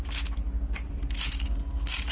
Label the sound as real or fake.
real